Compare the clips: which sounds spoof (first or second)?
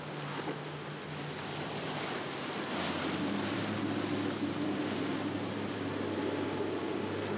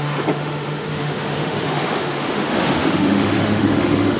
second